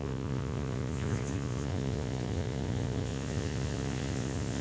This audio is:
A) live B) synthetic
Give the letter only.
B